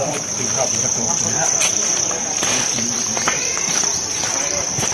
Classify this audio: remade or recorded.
remade